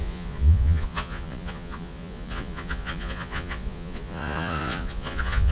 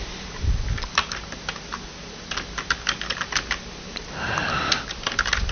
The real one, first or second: second